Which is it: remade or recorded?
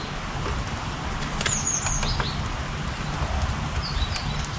recorded